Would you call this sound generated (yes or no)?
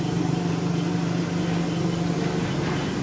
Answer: no